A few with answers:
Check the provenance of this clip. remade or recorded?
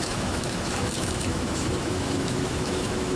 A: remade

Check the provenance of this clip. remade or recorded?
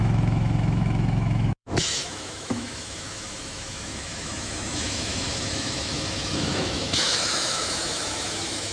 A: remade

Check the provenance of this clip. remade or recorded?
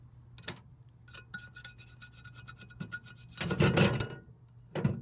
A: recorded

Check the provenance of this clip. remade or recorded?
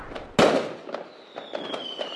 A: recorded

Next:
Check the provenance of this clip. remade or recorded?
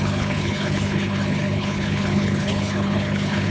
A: remade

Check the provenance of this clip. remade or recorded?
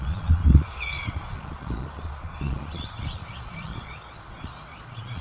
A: remade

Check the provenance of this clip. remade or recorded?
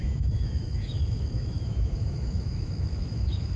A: remade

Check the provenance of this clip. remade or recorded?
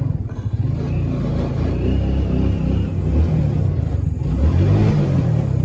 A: recorded